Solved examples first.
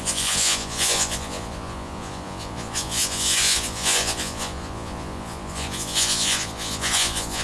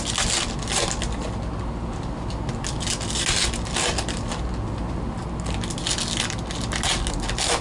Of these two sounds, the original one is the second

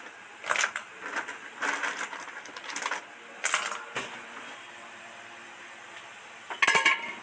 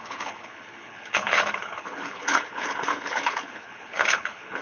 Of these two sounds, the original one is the first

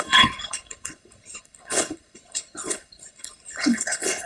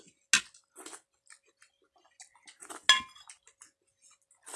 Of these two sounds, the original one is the second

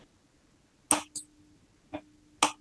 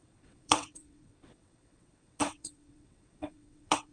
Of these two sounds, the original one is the first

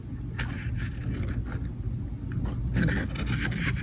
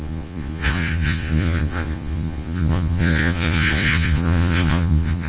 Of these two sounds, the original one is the first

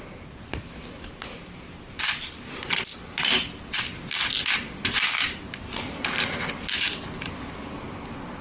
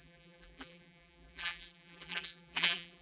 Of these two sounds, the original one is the first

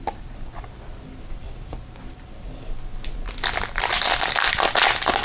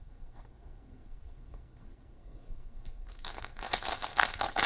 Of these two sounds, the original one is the first